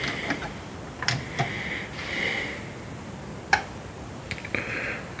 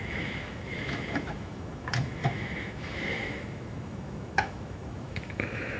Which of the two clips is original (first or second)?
first